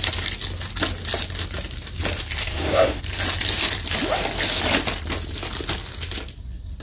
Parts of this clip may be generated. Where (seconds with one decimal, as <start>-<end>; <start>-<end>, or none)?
2.4-3.0

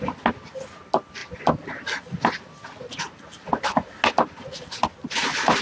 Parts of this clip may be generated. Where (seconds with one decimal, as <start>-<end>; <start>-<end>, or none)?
none

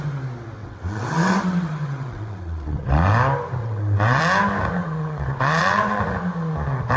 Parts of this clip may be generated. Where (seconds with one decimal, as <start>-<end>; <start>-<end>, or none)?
0.6-2.9; 3.6-4.2; 4.8-6.0

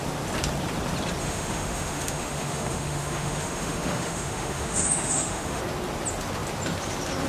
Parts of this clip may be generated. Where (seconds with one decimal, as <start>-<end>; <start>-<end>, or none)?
1.2-5.6

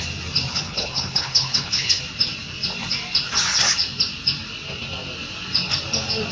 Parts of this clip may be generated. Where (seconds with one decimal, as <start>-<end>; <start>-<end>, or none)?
0.5-2.0

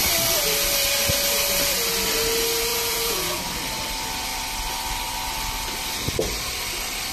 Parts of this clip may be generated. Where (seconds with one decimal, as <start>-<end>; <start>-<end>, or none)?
2.7-3.4

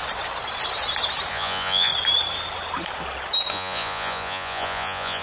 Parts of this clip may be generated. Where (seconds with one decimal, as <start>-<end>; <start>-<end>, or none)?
1.3-1.9; 3.5-5.2

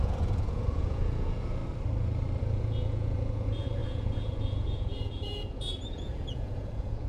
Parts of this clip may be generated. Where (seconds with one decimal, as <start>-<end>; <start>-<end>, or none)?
0.0-1.6; 2.4-7.1